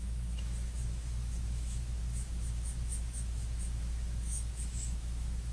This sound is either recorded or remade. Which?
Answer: remade